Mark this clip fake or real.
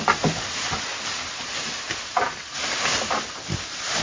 real